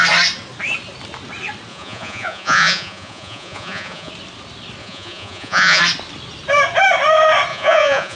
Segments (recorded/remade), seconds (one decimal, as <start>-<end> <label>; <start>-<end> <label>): 0.0-1.7 recorded; 1.7-4.1 remade; 4.1-4.8 recorded; 4.8-5.8 remade; 5.8-7.5 recorded; 7.5-8.2 remade